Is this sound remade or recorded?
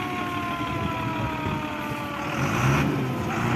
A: recorded